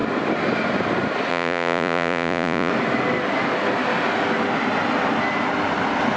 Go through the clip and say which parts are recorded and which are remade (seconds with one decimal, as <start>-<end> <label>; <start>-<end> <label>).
0.0-1.3 recorded; 1.3-2.7 remade; 2.7-6.2 recorded